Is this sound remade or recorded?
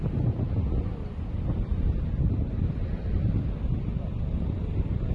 recorded